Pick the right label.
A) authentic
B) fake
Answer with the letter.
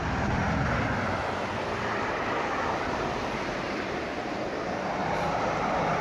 A